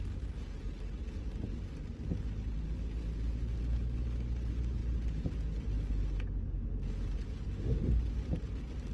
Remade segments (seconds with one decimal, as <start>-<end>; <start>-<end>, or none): none

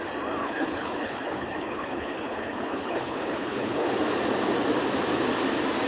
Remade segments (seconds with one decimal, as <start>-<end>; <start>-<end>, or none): 0.4-3.9

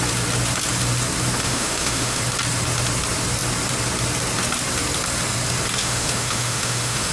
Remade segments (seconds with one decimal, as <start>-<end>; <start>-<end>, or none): 1.4-2.2; 5.8-7.1

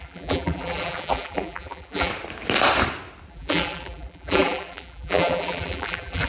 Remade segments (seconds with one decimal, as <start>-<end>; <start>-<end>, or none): 0.0-2.1; 3.3-6.3

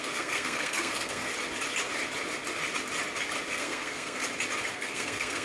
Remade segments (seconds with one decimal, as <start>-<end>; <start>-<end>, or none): 0.0-1.3; 3.5-4.2; 4.7-5.4

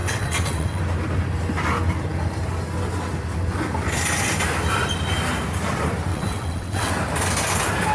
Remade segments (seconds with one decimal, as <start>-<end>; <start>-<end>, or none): 0.0-0.8; 6.1-6.9

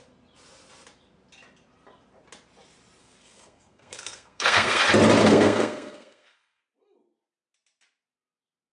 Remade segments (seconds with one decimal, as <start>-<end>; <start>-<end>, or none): 3.0-4.8; 5.2-6.6